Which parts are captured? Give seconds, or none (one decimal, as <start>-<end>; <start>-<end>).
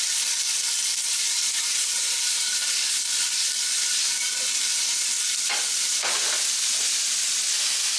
0.0-8.0